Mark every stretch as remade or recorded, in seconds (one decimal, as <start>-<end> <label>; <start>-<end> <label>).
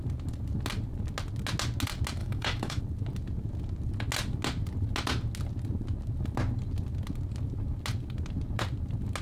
0.0-2.2 recorded; 2.2-2.8 remade; 2.8-9.2 recorded